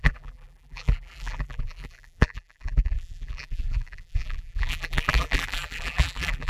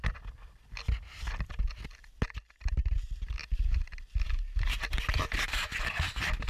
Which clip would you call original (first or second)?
second